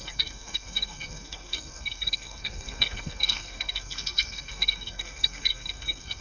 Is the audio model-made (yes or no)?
yes